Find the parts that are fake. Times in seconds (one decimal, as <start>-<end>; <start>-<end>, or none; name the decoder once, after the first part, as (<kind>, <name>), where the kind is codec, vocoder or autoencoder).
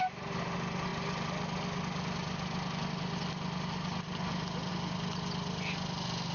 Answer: none